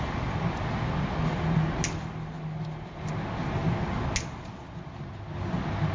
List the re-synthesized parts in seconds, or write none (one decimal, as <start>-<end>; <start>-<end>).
none